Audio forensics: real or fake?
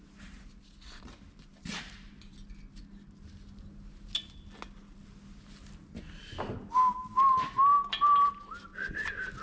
real